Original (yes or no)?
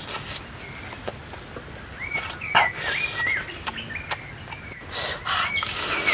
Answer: yes